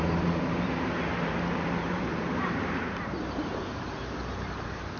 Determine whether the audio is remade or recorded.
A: remade